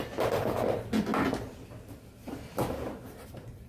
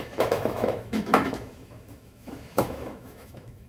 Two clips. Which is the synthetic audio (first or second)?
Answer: second